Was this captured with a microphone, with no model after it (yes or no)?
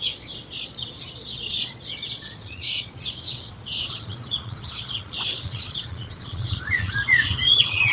no